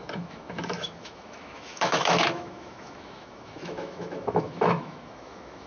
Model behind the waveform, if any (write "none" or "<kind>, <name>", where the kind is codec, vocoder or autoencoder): autoencoder, DAC-VAE